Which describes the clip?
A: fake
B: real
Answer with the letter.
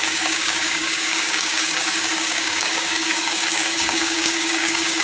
A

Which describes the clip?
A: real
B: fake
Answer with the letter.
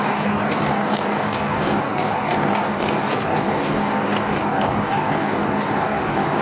B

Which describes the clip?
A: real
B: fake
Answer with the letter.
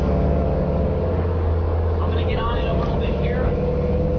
B